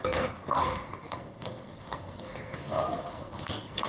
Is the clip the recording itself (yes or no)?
no